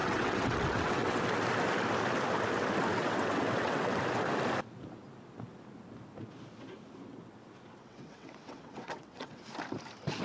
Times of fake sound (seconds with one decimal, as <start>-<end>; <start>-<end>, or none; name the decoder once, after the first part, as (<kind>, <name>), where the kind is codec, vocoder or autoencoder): 0.0-1.2 (vocoder, WaveNeXt); 3.0-4.0; 7.8-9.4